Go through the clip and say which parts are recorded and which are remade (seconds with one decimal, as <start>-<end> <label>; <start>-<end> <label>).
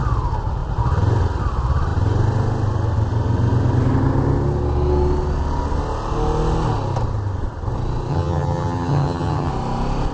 0.0-8.1 recorded; 8.1-9.5 remade; 9.5-10.1 recorded